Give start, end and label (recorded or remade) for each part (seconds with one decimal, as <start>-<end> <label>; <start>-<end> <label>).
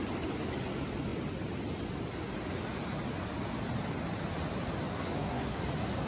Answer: 0.0-4.9 recorded; 4.9-5.6 remade; 5.6-6.1 recorded